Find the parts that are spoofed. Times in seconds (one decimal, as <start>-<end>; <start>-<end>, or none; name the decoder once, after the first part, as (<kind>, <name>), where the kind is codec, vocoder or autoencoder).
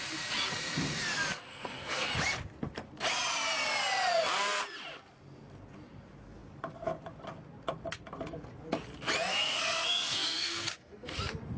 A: 1.5-2.1 (codec, SNAC); 9.3-11.2